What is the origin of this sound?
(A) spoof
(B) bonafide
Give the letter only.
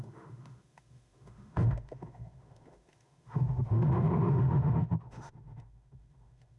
A